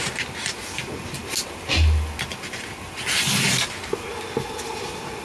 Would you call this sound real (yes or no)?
yes